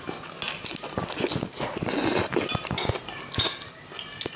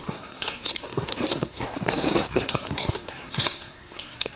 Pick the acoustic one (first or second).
first